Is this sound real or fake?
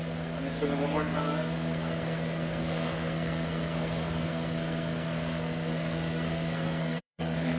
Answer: fake